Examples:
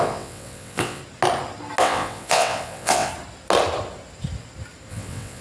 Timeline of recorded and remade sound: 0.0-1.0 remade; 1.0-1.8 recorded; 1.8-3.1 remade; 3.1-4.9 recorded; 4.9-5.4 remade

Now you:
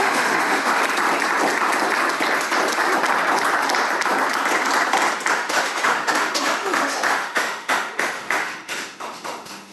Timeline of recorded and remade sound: 0.0-0.8 remade; 0.8-5.3 recorded; 5.3-9.7 remade

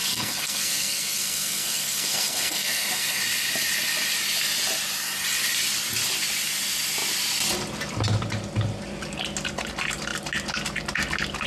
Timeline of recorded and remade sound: 0.0-3.2 remade; 3.2-11.5 recorded

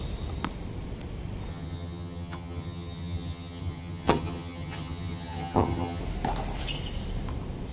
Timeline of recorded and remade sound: 0.0-1.5 recorded; 1.5-6.0 remade; 6.0-7.7 recorded